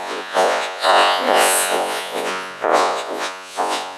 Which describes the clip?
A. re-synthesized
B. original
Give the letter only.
A